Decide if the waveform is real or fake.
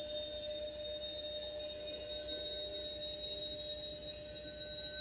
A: real